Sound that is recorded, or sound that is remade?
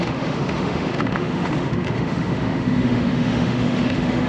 remade